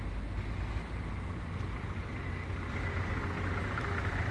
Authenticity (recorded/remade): recorded